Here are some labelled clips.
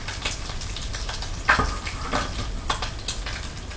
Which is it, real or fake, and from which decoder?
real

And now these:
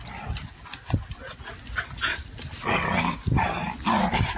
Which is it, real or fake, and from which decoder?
real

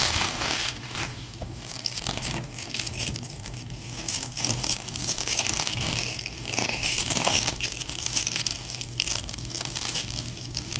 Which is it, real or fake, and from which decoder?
fake, codec, DAC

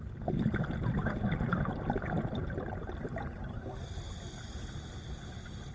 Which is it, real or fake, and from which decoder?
real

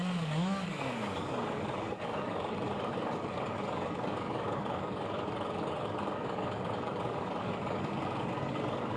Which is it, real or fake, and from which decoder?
fake, codec, DAC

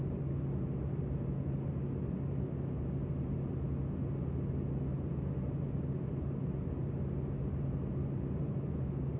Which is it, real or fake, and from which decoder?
real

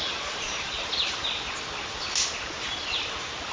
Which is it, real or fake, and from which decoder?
real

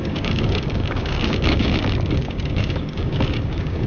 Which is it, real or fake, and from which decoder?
fake, codec, DAC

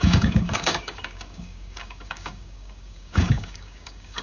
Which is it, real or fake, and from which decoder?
fake, codec, DAC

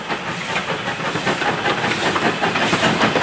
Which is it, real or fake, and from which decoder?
real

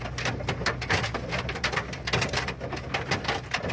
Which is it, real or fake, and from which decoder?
real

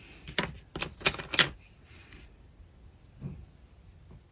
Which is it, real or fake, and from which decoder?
real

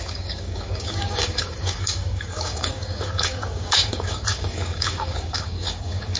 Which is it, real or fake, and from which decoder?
fake, codec, DAC